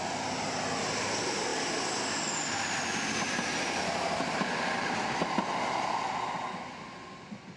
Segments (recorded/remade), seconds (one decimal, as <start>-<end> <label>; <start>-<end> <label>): 0.0-7.6 recorded